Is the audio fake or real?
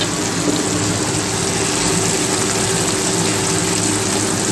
real